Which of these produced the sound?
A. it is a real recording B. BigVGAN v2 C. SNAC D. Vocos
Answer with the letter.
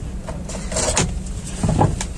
A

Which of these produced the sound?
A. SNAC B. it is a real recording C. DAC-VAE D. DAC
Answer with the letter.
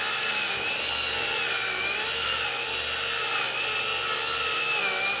B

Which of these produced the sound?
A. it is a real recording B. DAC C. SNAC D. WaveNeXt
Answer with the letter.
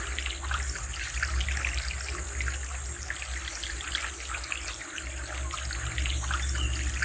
A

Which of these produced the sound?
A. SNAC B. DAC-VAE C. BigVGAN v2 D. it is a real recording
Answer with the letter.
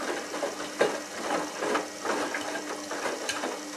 D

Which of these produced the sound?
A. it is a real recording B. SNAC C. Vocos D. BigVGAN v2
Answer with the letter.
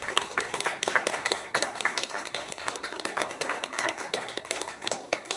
B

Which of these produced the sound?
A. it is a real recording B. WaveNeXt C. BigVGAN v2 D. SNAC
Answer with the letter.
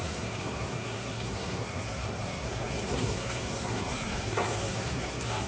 D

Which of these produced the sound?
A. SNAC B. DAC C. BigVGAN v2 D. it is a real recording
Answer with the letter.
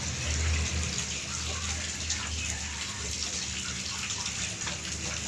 D